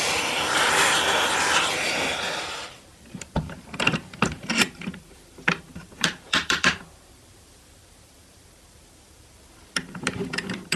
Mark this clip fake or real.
fake